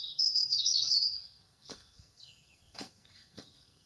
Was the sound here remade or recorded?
remade